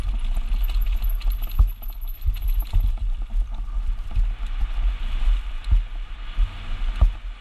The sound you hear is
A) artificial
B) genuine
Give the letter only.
B